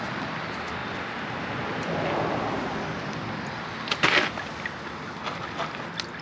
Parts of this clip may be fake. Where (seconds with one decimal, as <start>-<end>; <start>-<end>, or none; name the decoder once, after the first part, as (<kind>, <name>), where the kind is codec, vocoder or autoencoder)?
none